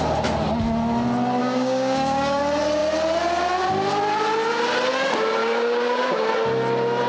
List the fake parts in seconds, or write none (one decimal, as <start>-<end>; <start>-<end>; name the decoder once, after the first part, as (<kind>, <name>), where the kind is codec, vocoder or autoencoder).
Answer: 1.4-2.4 (codec, DAC); 5.4-6.3